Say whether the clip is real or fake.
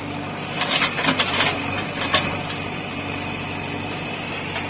real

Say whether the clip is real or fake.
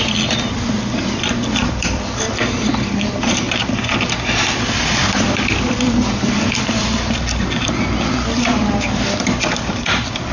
fake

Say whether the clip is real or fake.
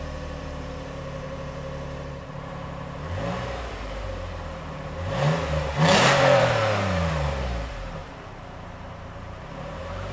fake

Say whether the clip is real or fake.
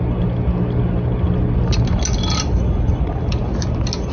real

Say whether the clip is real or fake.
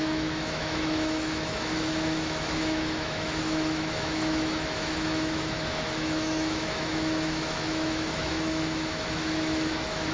fake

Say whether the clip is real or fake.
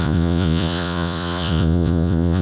fake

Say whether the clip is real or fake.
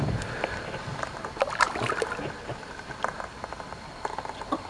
real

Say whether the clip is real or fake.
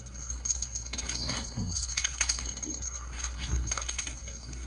fake